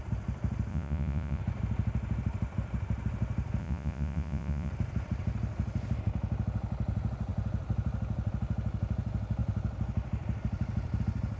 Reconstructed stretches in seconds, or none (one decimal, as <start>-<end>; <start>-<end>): 0.7-1.4; 3.6-4.7